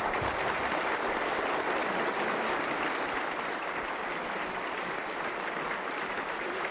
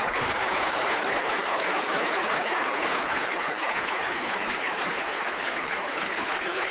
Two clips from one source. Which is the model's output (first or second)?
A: second